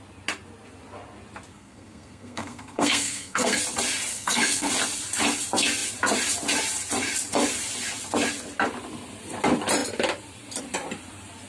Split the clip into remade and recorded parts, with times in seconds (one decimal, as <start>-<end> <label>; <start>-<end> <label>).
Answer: 0.0-1.5 recorded; 1.5-3.6 remade; 3.6-4.1 recorded; 4.1-4.7 remade; 4.7-11.5 recorded

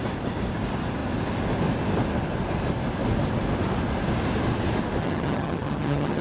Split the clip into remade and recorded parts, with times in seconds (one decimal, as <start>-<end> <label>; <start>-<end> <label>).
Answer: 0.0-5.0 recorded; 5.0-6.2 remade

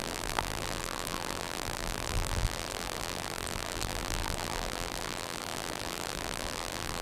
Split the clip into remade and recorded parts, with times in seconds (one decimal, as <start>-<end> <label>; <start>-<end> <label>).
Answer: 0.0-7.0 remade

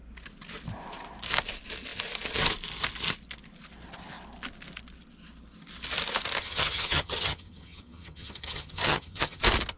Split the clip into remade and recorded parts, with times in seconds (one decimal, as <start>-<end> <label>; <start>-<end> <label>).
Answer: 0.0-6.4 recorded; 6.4-9.4 remade; 9.4-9.8 recorded